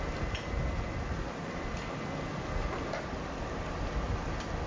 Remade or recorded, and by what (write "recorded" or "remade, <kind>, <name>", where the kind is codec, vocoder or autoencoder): recorded